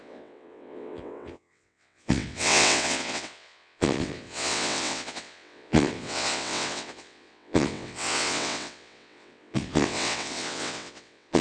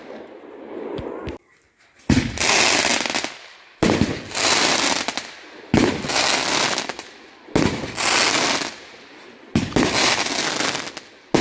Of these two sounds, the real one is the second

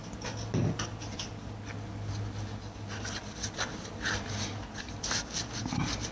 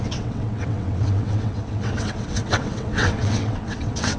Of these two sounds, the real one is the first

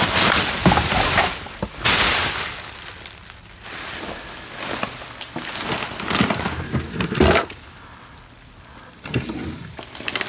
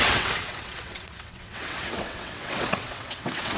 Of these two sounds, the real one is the first